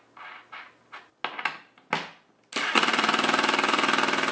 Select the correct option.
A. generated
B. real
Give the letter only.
B